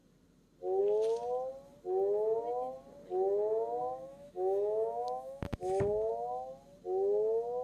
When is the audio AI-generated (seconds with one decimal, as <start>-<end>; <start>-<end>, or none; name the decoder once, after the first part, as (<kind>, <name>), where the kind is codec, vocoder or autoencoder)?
3.8-6.1 (autoencoder, DAC-VAE)